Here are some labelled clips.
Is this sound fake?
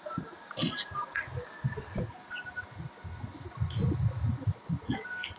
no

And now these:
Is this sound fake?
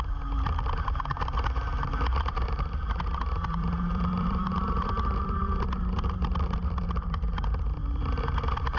yes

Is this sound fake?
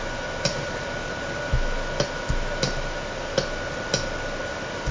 no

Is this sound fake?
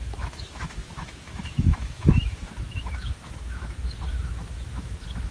yes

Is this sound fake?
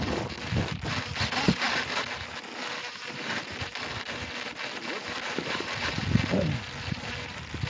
no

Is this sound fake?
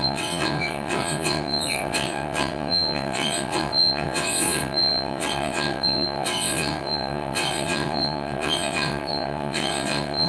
yes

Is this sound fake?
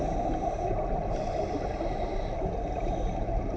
no